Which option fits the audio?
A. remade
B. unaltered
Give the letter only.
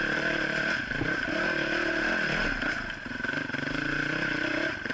B